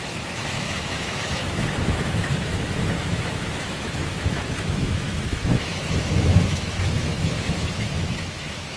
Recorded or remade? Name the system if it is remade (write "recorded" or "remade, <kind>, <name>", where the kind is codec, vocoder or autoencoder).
remade, autoencoder, DAC-VAE